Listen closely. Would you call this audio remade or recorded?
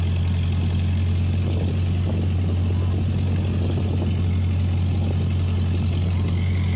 recorded